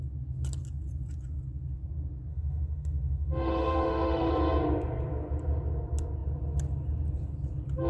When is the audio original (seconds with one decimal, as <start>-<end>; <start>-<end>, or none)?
0.0-2.3; 4.3-7.9